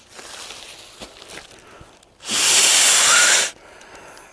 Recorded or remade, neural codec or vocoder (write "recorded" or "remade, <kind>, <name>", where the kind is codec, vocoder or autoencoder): recorded